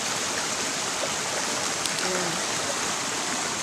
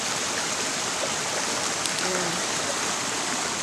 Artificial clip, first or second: first